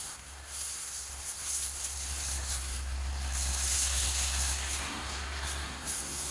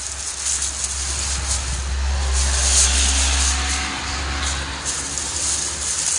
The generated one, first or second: first